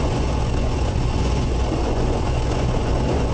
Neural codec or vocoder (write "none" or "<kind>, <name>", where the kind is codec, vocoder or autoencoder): vocoder, Vocos